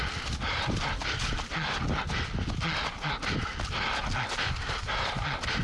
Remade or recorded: recorded